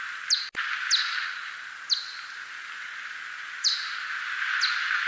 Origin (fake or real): real